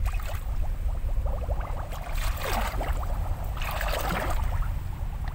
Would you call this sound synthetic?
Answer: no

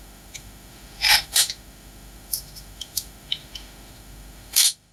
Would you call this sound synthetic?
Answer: yes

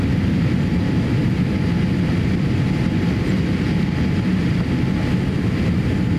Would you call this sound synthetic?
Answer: no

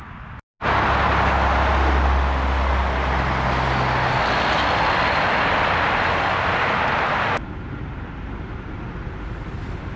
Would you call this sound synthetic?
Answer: no